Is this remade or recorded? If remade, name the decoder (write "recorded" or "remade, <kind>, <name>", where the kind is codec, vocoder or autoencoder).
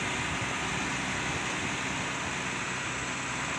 recorded